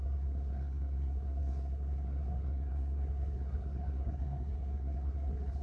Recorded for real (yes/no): no